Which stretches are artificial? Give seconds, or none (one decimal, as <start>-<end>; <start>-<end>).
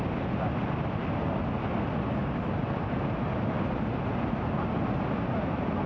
none